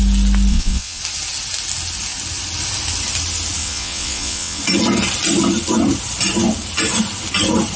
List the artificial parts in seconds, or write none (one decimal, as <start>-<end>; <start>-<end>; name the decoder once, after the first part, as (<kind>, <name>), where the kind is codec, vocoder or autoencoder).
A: 0.5-1.0 (vocoder, WaveNeXt); 3.6-4.6